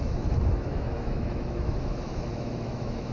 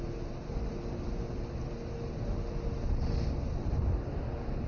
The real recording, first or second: second